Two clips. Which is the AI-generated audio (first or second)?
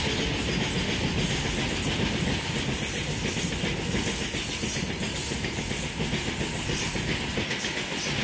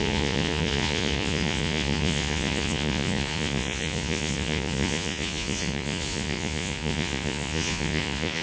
second